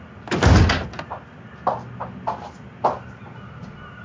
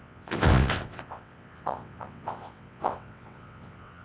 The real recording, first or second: first